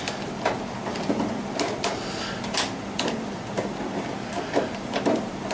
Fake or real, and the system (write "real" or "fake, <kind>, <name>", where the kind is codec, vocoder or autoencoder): real